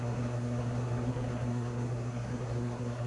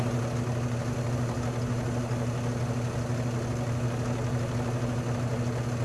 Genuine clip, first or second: second